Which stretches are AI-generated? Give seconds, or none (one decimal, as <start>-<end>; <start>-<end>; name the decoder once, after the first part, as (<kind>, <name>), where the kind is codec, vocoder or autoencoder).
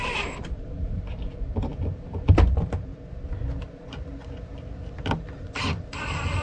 0.0-1.7 (vocoder, BigVGAN v2); 2.3-2.9; 5.4-6.4